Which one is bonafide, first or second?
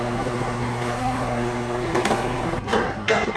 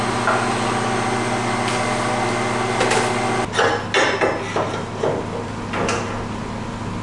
second